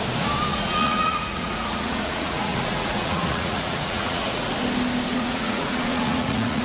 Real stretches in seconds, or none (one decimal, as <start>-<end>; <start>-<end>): 0.0-0.5; 4.5-5.1